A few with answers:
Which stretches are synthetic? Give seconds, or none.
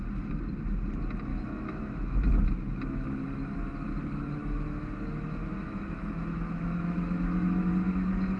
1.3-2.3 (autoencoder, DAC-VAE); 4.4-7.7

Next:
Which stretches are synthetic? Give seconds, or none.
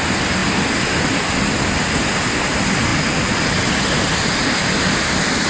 none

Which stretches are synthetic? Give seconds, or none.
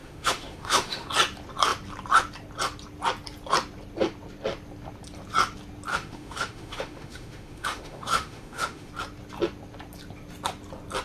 0.0-1.1 (autoencoder, DAC-VAE); 5.9-8.9